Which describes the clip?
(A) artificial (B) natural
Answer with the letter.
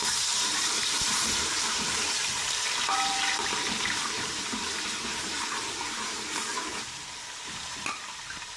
A